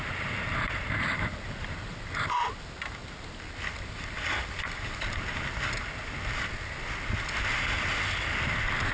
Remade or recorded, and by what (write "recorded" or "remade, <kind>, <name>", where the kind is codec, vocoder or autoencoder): recorded